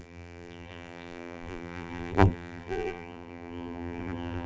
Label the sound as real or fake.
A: fake